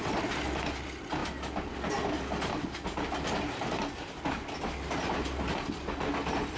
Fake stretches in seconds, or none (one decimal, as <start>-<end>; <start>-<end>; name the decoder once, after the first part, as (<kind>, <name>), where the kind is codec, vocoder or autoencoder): none